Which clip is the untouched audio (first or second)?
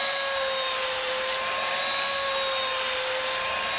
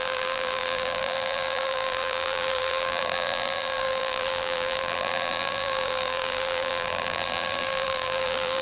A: first